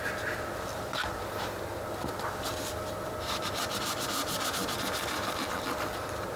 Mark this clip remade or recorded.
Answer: remade